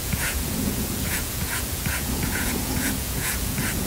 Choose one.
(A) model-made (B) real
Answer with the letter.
A